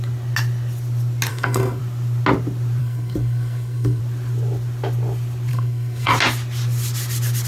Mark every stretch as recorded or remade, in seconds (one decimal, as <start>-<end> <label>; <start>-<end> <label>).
0.0-1.3 recorded; 1.3-1.8 remade; 1.8-2.8 recorded; 2.8-4.0 remade; 4.0-5.5 recorded; 5.5-6.1 remade; 6.1-7.5 recorded